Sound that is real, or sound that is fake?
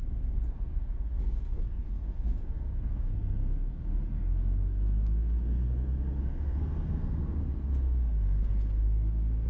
fake